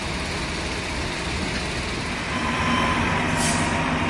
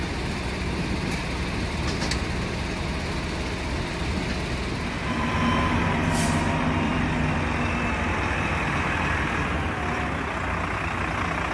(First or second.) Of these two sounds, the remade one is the first